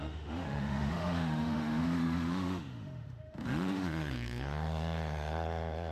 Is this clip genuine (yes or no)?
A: no